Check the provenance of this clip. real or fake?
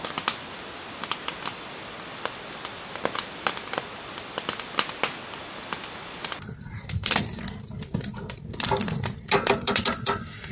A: real